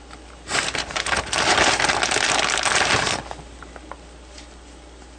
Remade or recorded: recorded